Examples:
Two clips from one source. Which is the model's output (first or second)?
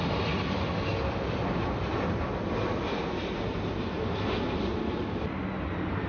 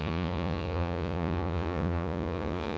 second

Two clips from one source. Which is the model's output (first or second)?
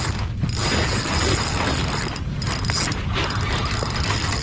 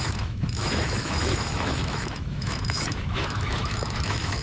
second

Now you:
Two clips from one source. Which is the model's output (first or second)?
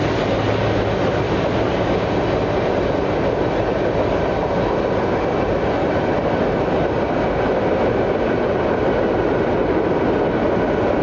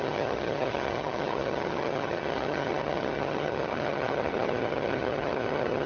second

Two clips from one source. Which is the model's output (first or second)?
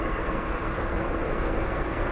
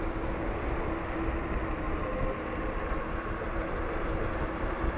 first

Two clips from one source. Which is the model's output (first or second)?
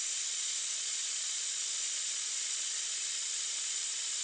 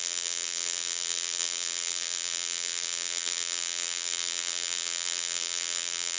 second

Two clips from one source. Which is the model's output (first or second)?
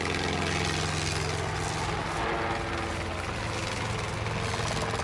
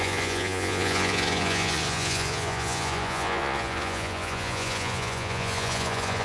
second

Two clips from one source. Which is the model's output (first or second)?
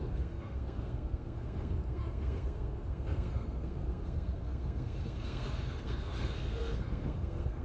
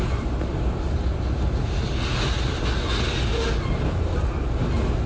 first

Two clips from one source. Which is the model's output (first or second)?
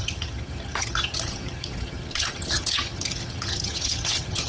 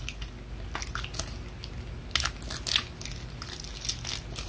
first